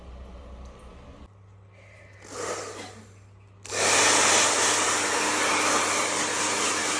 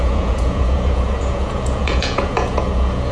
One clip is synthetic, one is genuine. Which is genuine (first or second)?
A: first